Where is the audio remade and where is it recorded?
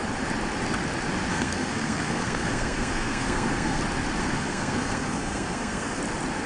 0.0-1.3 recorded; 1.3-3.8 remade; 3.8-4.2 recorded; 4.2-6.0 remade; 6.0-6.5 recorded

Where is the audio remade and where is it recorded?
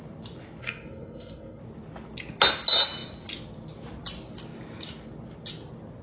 0.0-0.6 recorded; 0.6-1.6 remade; 1.6-6.0 recorded